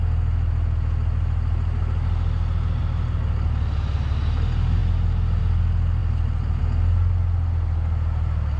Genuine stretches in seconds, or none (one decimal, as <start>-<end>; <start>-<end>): 0.0-8.6